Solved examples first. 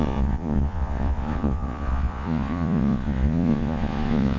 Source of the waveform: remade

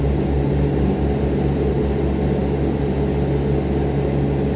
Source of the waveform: recorded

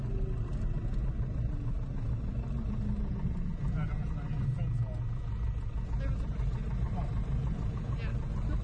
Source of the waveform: recorded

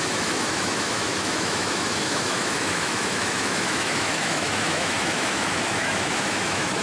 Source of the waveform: remade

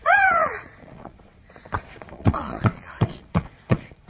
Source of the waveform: remade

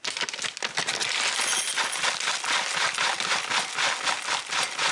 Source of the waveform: recorded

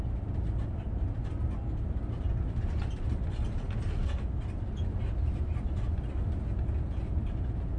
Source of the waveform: recorded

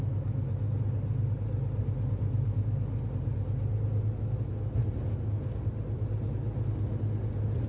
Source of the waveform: recorded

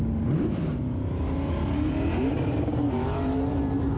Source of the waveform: remade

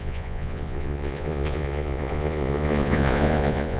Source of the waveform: remade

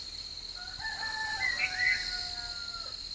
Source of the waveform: recorded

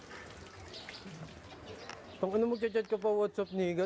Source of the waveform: recorded